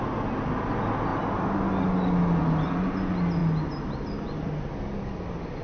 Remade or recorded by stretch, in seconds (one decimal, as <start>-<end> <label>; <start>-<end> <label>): 0.0-5.6 recorded